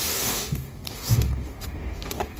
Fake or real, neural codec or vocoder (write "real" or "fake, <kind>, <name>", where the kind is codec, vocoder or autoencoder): fake, codec, DAC